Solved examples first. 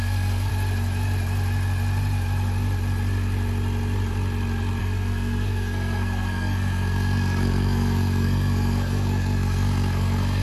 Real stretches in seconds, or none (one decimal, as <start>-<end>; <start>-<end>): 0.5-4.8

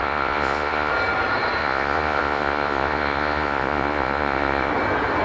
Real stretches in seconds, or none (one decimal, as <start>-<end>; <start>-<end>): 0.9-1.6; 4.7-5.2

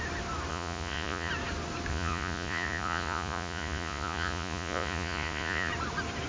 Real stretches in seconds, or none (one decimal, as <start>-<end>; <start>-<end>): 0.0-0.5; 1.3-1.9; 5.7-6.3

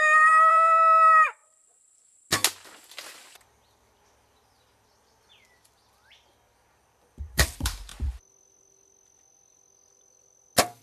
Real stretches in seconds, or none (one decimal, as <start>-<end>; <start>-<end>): 1.4-3.3; 7.9-10.8

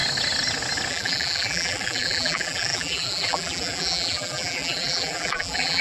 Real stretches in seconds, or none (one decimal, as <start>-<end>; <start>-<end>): 0.0-0.9